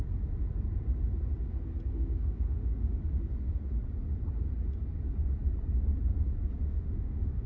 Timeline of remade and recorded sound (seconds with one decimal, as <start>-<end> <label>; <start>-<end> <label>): 0.0-1.9 recorded; 1.9-3.0 remade; 3.0-6.6 recorded; 6.6-7.5 remade